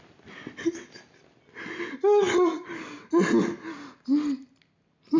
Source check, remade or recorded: recorded